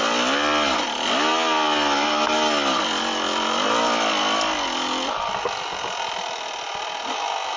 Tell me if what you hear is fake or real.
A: real